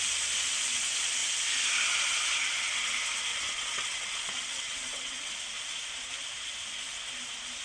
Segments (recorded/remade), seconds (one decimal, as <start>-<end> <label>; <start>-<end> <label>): 0.0-3.3 recorded; 3.3-5.3 remade; 5.3-7.6 recorded

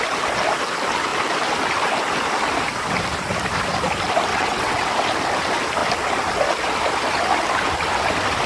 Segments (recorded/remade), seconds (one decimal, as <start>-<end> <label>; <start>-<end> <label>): 0.0-4.3 recorded; 4.3-4.9 remade; 4.9-8.5 recorded

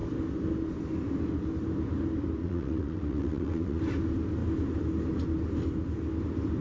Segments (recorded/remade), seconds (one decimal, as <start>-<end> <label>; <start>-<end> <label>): 0.0-2.4 recorded; 2.4-3.8 remade; 3.8-6.6 recorded

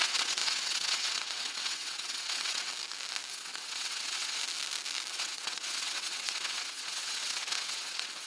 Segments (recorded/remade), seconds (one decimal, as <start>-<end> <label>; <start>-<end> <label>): 0.0-2.7 remade; 2.7-3.3 recorded; 3.3-4.4 remade; 4.4-5.1 recorded; 5.1-8.3 remade